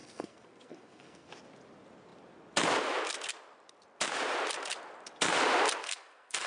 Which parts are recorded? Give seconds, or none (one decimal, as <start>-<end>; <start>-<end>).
1.3-5.8